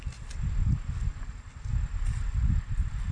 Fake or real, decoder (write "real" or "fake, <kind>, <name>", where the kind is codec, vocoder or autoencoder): real